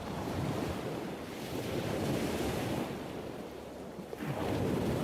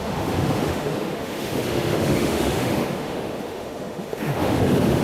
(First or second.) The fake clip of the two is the second